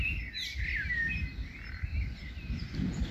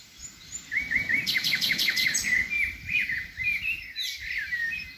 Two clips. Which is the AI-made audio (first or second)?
second